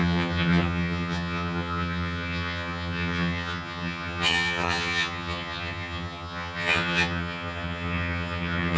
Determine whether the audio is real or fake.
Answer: fake